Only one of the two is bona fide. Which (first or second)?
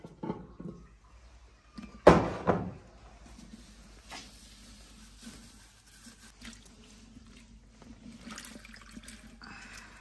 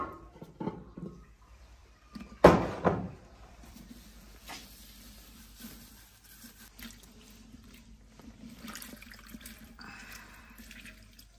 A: first